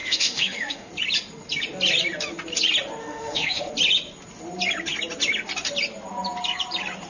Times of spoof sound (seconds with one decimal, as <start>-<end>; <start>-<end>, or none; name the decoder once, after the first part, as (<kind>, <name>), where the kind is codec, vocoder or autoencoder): 0.0-0.9 (autoencoder, DAC-VAE); 3.0-3.7